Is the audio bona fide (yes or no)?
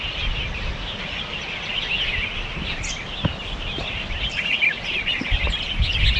yes